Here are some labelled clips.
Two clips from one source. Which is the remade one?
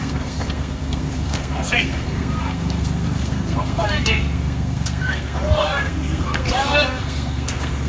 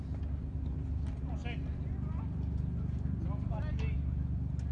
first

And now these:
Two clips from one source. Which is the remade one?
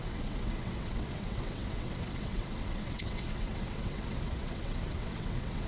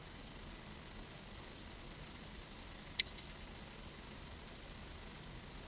first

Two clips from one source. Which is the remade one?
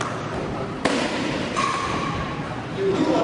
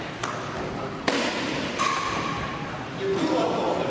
first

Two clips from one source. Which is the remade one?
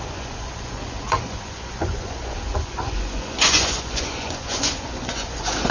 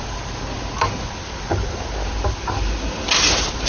first